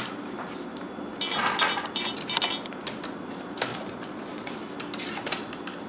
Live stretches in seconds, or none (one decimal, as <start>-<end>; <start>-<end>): 0.0-3.7; 4.5-5.9